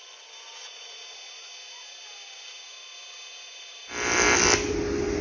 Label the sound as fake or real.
real